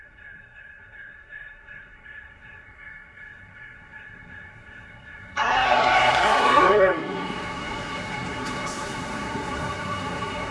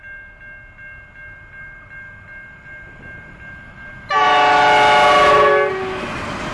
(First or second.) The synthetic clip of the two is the first